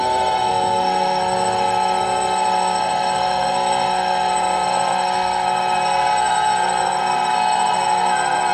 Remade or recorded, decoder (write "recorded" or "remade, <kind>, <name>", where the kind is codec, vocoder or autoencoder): remade, codec, SNAC